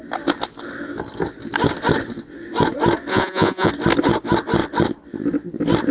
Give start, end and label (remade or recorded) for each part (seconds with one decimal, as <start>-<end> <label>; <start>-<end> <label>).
0.0-3.1 recorded; 3.1-3.7 remade; 3.7-5.9 recorded